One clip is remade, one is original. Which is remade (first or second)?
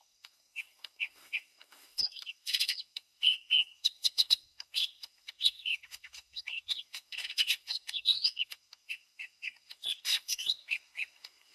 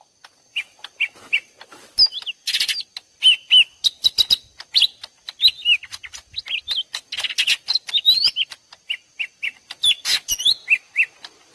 first